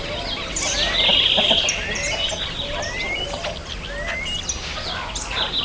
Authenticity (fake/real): real